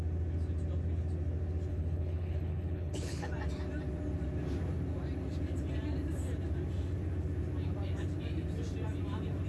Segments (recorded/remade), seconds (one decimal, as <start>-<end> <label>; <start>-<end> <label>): 0.0-1.7 recorded; 1.7-3.3 remade; 3.3-9.5 recorded